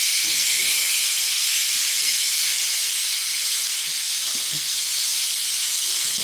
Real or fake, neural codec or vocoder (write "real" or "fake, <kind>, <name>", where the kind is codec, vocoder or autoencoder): fake, codec, SNAC